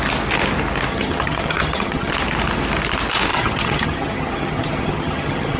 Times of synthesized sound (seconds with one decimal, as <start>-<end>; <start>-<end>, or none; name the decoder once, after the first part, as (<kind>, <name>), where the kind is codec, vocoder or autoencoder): 0.9-2.1 (vocoder, HiFi-GAN); 3.3-5.6